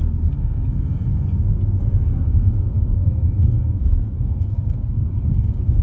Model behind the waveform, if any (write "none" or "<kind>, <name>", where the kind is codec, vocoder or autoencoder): codec, SNAC